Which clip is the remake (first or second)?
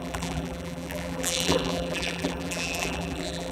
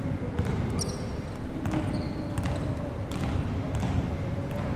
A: first